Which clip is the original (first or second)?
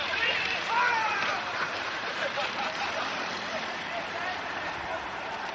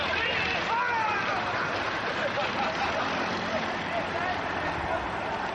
second